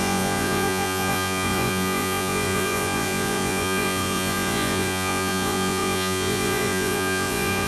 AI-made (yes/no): yes